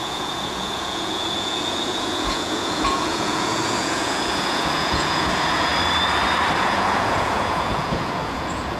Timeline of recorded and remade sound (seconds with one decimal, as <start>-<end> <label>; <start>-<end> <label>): 0.0-5.7 remade; 5.7-6.6 recorded; 6.6-8.8 remade